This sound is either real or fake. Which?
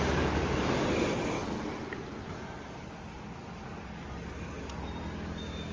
real